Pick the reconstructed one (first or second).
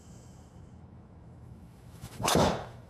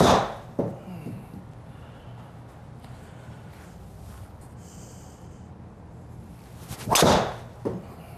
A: first